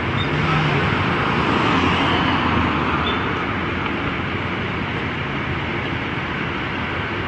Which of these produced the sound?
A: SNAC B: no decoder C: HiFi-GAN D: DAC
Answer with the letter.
B